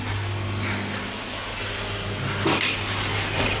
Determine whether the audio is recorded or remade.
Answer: recorded